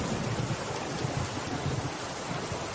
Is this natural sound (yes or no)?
yes